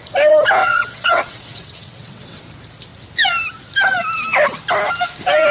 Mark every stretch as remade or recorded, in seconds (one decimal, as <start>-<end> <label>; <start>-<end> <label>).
0.0-0.6 recorded; 0.6-2.4 remade; 2.4-5.5 recorded